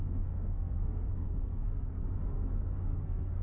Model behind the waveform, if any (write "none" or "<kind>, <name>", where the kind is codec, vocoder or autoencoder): codec, SNAC